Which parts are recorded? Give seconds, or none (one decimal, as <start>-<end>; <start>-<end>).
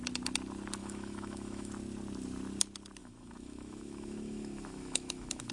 0.0-0.8; 1.7-3.0